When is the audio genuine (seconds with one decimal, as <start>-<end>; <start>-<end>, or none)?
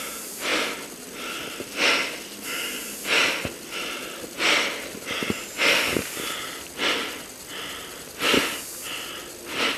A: 0.0-9.8